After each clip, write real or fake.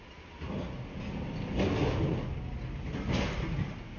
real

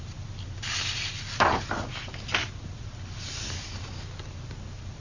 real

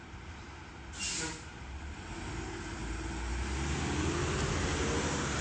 real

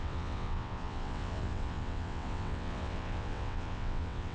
fake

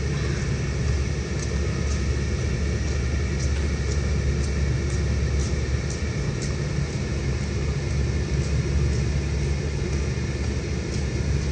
real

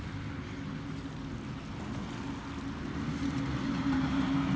real